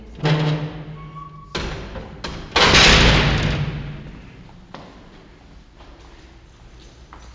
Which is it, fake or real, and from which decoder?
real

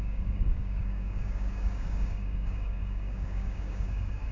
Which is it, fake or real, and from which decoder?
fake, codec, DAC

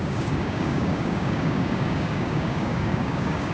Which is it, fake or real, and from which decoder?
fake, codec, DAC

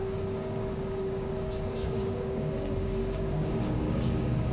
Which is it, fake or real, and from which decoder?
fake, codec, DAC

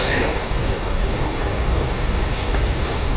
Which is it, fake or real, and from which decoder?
fake, codec, DAC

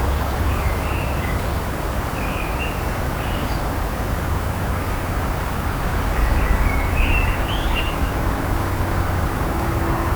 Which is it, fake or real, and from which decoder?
fake, codec, DAC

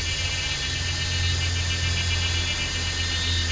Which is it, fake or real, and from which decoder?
real